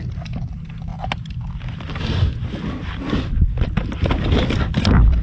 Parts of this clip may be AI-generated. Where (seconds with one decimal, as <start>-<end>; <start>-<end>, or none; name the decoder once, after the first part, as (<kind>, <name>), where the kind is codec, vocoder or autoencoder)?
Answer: none